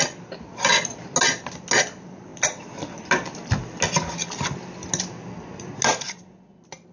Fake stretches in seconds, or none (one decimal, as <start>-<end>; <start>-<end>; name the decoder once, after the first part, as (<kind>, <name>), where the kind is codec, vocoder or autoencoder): none